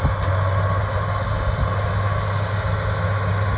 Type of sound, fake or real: real